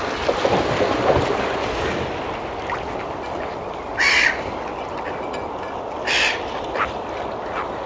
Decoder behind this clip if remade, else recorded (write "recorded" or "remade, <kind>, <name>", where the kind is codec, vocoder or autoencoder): recorded